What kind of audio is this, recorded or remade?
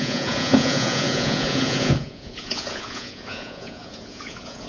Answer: remade